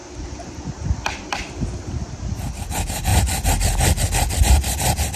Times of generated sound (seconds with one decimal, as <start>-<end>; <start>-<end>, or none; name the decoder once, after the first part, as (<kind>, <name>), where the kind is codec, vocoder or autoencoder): none